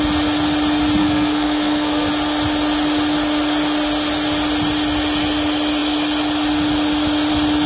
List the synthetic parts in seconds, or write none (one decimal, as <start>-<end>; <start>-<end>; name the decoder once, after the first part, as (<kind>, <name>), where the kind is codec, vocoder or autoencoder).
1.0-2.1 (codec, SNAC)